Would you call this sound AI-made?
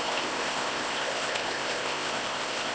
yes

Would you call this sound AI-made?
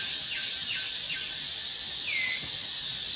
no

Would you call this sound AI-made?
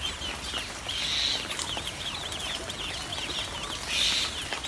no